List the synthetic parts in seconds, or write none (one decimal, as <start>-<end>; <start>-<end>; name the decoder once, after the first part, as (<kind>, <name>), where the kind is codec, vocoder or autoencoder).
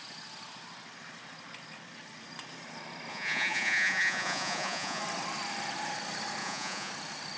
3.1-5.0 (vocoder, Vocos); 6.4-6.9